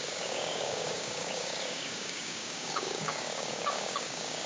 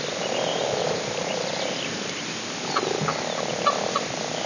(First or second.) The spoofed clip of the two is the first